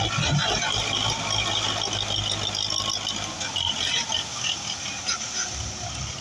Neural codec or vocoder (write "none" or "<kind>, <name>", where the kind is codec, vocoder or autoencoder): none